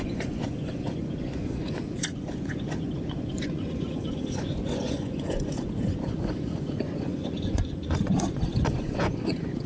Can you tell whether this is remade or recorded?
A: remade